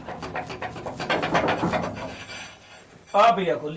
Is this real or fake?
real